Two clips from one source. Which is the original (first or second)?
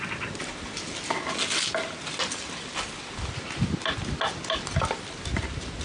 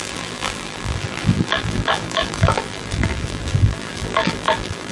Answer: first